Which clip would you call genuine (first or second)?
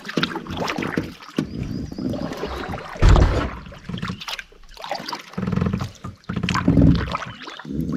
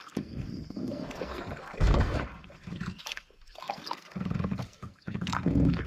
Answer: first